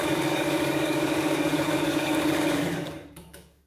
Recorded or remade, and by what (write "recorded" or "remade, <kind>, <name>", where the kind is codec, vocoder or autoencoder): remade, codec, DAC